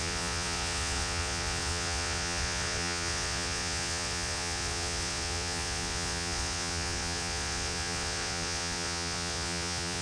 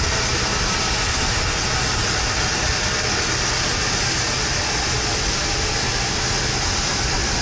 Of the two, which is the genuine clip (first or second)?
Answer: second